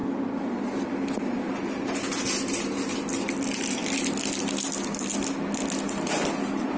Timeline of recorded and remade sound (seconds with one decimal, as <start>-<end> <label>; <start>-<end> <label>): 0.0-6.8 recorded